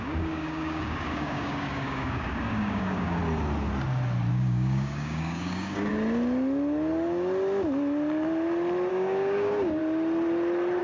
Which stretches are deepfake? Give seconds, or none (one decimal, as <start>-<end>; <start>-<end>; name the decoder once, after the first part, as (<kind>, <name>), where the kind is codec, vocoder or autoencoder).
0.0-3.2 (codec, DAC); 4.3-5.9; 8.9-9.8